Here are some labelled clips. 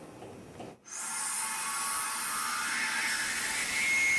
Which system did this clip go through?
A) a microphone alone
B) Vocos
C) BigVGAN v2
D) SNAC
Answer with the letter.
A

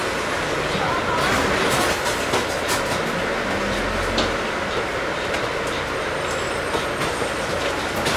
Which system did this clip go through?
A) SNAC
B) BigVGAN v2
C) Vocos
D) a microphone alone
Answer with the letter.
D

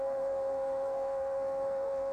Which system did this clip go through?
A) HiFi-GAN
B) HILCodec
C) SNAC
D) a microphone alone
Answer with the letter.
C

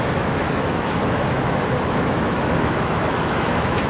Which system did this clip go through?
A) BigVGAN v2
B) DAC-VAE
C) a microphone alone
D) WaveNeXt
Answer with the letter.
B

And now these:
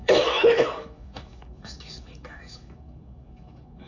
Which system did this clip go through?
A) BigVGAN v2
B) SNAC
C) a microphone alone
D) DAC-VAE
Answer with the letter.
D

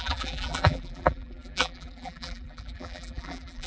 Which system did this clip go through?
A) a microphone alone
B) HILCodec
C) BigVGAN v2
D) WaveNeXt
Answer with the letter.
C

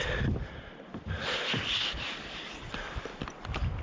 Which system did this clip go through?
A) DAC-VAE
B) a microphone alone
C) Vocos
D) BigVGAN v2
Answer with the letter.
B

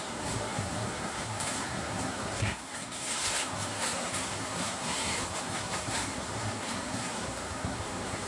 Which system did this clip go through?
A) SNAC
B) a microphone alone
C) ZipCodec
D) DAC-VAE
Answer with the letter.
A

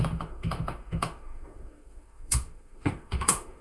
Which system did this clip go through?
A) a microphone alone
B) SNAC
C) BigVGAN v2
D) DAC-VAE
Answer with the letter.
D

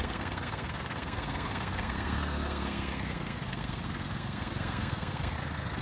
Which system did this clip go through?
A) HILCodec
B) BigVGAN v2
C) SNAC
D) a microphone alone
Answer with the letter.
C